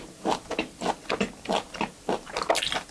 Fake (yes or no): no